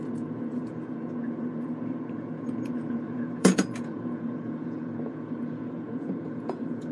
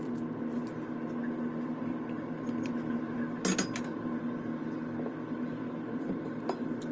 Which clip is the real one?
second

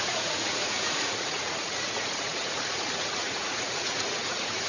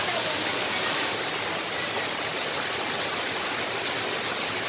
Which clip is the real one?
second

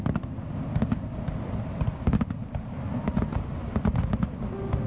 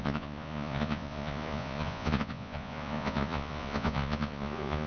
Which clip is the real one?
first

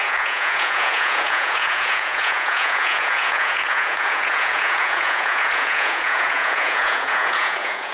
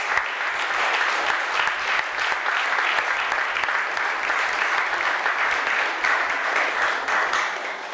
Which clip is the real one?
second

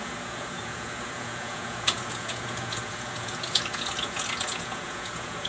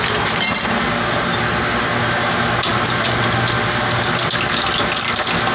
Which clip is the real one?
second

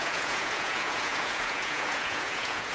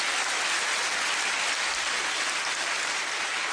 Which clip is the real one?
second